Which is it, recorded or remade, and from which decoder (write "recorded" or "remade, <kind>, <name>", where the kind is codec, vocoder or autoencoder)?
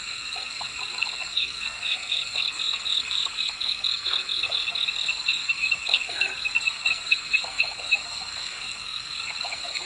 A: remade, codec, SNAC